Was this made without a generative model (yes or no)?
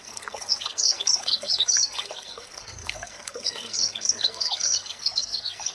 no